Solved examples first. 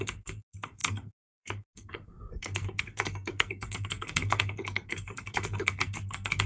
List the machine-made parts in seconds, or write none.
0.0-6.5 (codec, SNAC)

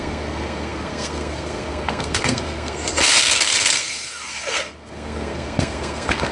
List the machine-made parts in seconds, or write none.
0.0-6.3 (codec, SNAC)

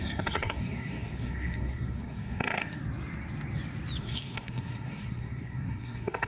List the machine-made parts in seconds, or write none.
0.0-2.8 (codec, SNAC); 4.0-6.3

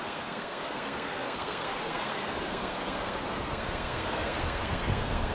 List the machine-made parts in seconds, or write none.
0.0-5.3 (codec, SNAC)